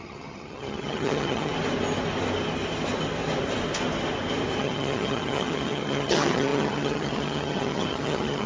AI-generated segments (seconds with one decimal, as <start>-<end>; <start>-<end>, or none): 0.0-1.5; 4.6-8.5